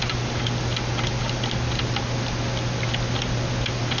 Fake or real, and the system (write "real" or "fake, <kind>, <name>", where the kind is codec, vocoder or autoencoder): real